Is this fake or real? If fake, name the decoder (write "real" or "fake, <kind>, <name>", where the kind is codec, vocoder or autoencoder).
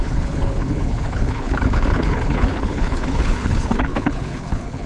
fake, codec, HILCodec